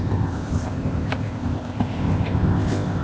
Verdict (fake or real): fake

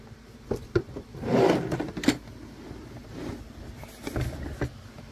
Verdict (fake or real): real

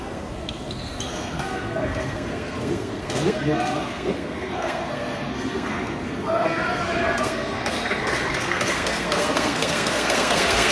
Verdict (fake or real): fake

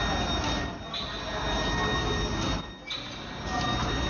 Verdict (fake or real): real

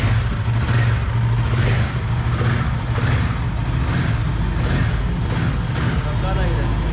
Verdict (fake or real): real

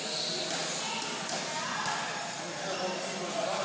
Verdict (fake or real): real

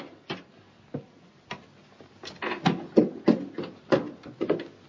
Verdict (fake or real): real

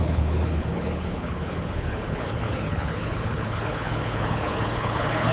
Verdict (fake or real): fake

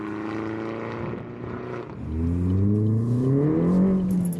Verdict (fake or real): real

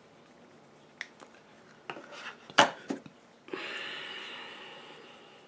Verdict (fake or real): real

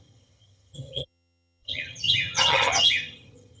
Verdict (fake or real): fake